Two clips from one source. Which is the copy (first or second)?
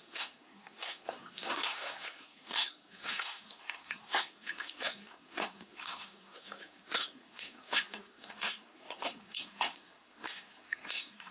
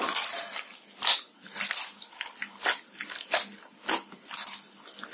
first